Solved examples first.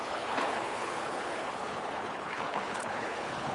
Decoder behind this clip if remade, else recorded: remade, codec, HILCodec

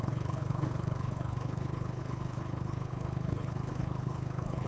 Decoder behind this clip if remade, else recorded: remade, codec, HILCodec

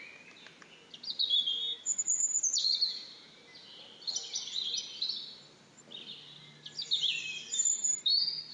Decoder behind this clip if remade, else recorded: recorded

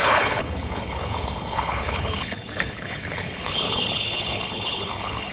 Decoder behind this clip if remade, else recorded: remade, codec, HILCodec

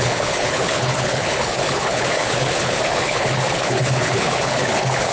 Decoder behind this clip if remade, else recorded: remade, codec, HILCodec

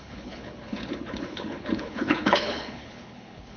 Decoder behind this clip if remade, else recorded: remade, codec, HILCodec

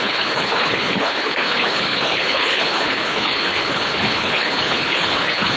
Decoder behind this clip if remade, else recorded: remade, codec, HILCodec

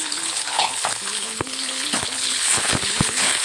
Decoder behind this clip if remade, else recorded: remade, codec, HILCodec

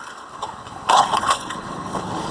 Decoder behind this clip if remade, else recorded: remade, codec, HILCodec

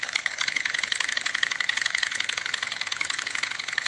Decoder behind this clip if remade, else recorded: remade, codec, HILCodec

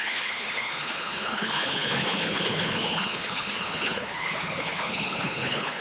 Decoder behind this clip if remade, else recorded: remade, codec, HILCodec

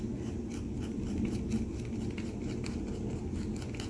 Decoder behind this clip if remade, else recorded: recorded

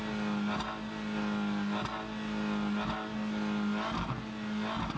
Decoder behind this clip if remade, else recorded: recorded